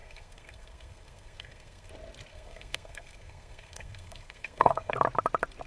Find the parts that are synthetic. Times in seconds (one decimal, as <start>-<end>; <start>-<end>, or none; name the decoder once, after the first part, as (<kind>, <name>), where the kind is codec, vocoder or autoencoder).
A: 0.0-1.9 (codec, SNAC); 2.3-4.9